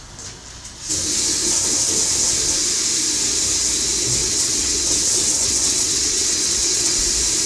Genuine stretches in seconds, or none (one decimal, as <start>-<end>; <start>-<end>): 0.0-4.2; 7.0-7.5